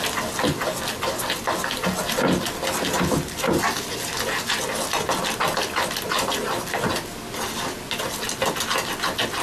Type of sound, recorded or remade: recorded